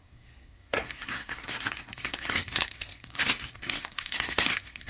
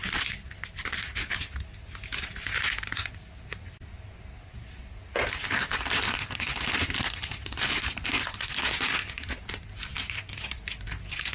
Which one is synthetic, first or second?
first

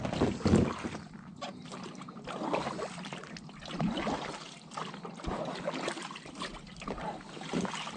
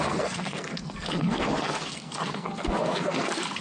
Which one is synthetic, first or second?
second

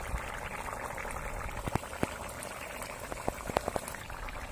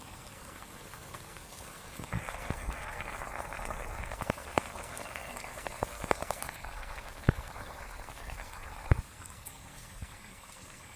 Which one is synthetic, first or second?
second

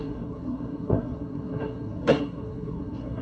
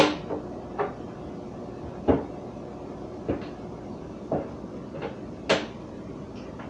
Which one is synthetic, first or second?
first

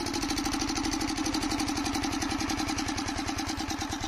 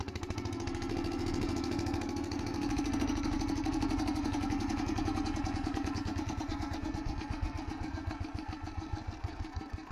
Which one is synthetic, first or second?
second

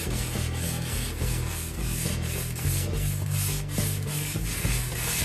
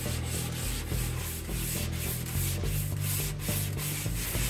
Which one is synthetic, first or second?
first